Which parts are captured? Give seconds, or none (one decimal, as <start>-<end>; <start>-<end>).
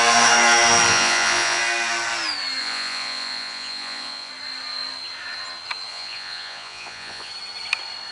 0.0-0.9; 1.6-2.6; 4.3-5.9; 7.3-8.1